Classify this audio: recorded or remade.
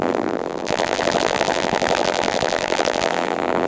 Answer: remade